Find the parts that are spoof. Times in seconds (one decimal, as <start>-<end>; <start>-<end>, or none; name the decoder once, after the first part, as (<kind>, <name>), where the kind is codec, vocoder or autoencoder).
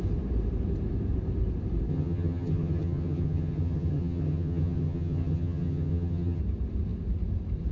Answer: 1.9-6.4 (vocoder, HiFi-GAN)